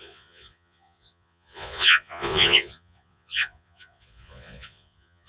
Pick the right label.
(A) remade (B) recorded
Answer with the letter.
A